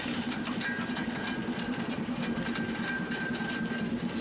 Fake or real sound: real